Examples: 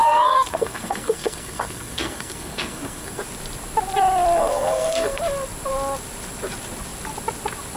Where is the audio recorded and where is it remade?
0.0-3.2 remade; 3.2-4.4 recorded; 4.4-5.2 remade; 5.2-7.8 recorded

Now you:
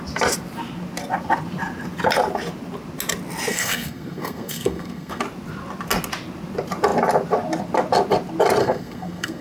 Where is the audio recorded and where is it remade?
0.0-3.5 recorded; 3.5-5.2 remade; 5.2-8.6 recorded; 8.6-9.4 remade

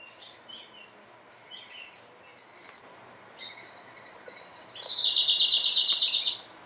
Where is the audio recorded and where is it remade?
0.0-2.3 recorded; 2.3-6.3 remade; 6.3-6.7 recorded

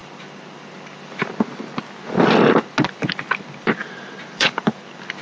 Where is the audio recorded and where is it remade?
0.0-3.8 recorded; 3.8-4.8 remade; 4.8-5.2 recorded

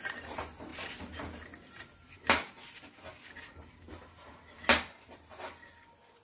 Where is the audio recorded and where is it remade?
0.0-0.7 remade; 0.7-3.7 recorded; 3.7-6.2 remade

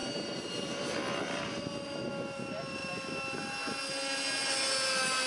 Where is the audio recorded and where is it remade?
0.0-2.1 remade; 2.1-5.3 recorded

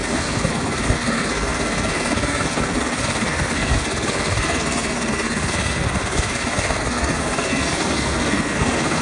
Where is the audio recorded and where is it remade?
0.0-9.0 remade